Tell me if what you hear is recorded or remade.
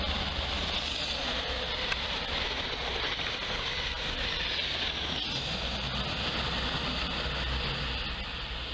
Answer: recorded